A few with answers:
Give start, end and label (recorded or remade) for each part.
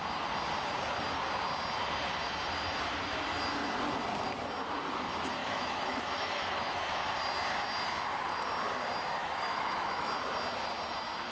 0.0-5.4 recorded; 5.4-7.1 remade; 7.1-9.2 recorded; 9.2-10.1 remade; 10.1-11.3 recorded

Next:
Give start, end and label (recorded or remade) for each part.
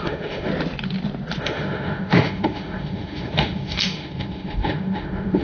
0.0-0.5 remade; 0.5-1.4 recorded; 1.4-5.4 remade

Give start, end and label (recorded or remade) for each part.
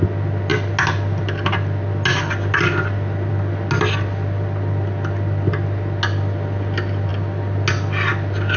0.0-8.6 recorded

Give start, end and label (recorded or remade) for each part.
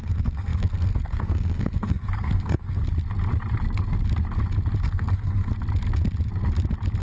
0.0-2.8 remade; 2.8-4.8 recorded; 4.8-5.5 remade; 5.5-7.0 recorded